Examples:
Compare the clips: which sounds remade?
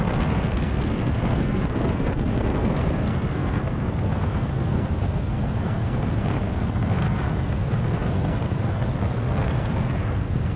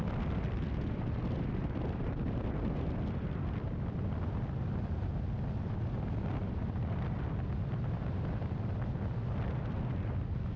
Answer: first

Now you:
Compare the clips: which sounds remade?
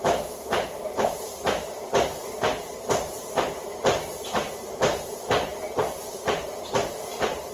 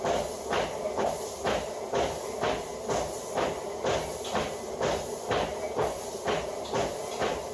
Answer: first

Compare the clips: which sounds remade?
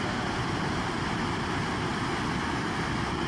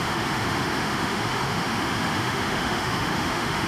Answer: second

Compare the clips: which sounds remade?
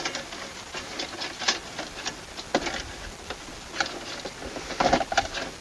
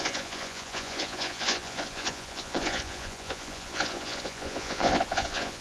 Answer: second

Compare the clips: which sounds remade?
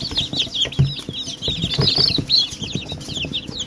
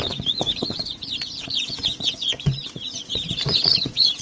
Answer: second